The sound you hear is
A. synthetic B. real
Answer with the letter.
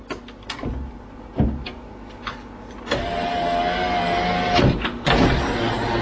B